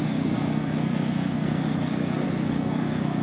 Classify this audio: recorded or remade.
remade